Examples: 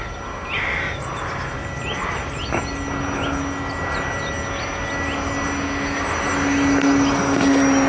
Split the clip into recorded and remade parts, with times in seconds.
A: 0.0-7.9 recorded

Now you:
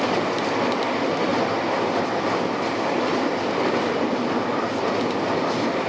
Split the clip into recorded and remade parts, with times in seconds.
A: 0.0-1.3 recorded; 1.3-4.8 remade; 4.8-5.9 recorded

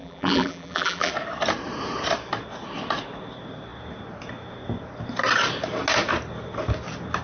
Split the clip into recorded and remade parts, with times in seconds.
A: 0.0-1.1 remade; 1.1-7.2 recorded

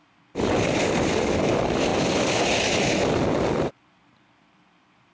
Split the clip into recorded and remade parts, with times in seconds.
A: 0.0-1.9 remade; 1.9-3.1 recorded; 3.1-5.1 remade

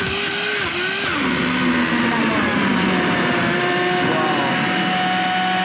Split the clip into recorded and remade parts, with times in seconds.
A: 0.0-0.5 recorded; 0.5-1.4 remade; 1.4-2.5 recorded; 2.5-4.1 remade; 4.1-5.6 recorded

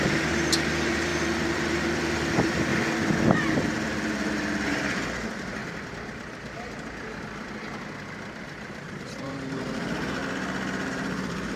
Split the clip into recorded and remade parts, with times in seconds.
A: 0.0-2.7 remade; 2.7-3.3 recorded; 3.3-5.6 remade; 5.6-8.4 recorded; 8.4-10.2 remade; 10.2-10.9 recorded; 10.9-11.6 remade

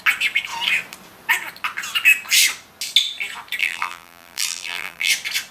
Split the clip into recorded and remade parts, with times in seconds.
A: 0.0-3.6 recorded; 3.6-5.1 remade; 5.1-5.5 recorded

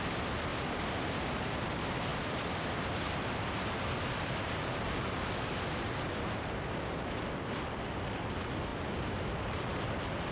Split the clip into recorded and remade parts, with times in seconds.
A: 0.0-0.5 remade; 0.5-1.0 recorded; 1.0-10.3 remade